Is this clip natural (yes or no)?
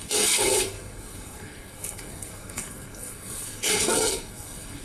no